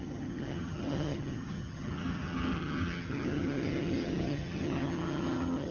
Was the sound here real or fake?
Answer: fake